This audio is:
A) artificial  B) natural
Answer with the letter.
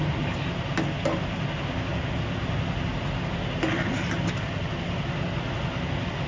B